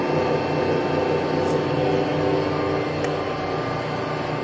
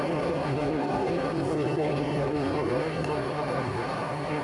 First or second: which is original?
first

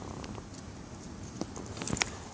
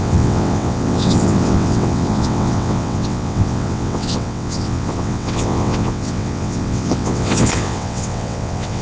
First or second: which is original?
first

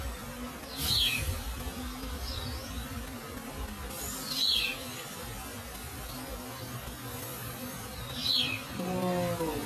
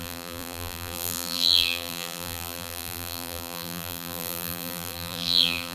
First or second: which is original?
first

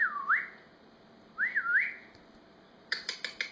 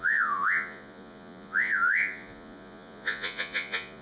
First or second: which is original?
first